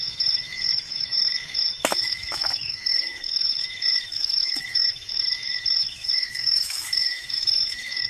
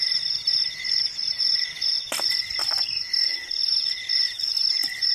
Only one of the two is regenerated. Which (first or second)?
first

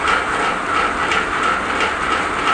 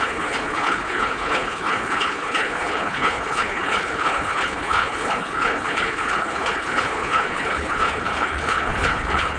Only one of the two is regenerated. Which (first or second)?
second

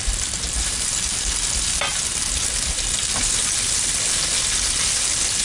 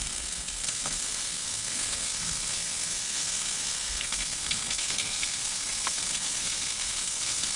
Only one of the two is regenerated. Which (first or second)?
second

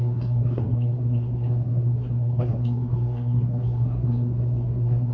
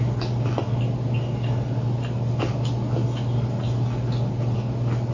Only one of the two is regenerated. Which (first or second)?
first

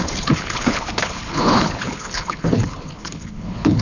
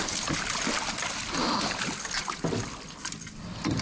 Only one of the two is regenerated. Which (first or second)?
first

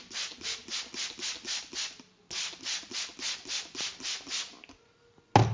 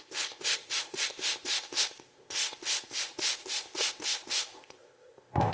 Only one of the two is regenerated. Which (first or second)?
second